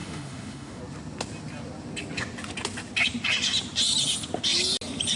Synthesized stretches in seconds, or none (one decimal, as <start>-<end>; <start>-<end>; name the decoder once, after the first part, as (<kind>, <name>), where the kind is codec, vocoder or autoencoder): 0.0-0.8 (autoencoder, DAC-VAE)